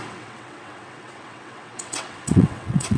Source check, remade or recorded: remade